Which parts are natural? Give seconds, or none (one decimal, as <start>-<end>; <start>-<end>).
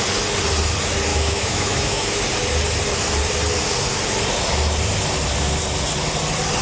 0.0-1.1; 2.2-6.6